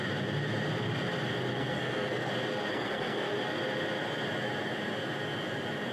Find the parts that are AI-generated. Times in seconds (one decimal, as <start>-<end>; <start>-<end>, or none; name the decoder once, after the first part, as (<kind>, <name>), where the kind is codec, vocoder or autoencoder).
1.5-2.3 (codec, SNAC); 2.7-3.3